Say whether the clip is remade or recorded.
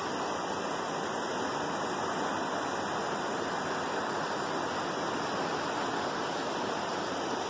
recorded